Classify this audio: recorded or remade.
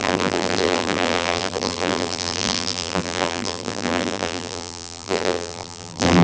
remade